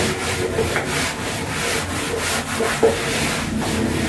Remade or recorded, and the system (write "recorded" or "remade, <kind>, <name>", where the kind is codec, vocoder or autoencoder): recorded